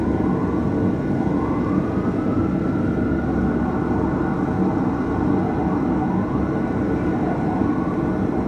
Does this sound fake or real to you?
real